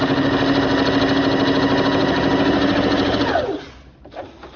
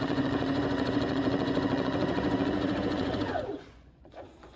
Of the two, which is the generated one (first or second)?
second